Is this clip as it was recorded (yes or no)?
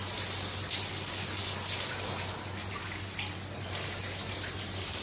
yes